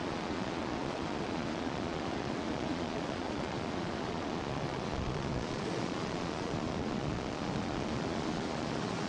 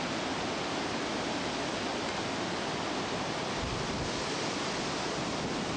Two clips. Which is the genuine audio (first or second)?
second